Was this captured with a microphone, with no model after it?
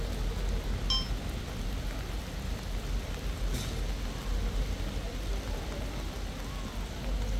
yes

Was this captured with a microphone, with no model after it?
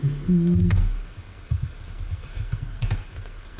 no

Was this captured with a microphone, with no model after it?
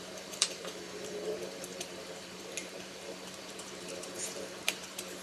no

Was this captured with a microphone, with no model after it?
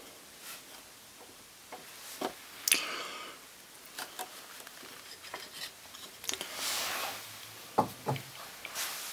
yes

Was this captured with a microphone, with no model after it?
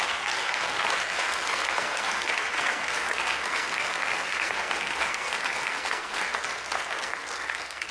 no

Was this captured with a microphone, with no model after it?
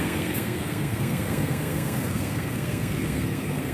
no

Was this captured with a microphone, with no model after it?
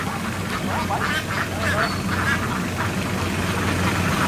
yes